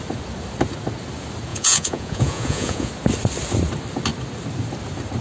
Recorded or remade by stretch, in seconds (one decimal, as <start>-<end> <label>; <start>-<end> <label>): 0.0-1.5 recorded; 1.5-2.9 remade; 2.9-5.2 recorded